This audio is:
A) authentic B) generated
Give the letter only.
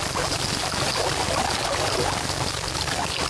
A